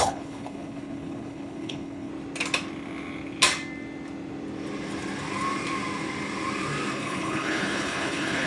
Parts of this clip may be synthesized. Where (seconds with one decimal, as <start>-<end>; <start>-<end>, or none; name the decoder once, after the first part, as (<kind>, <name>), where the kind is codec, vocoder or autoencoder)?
0.0-2.1 (codec, HILCodec); 6.9-8.5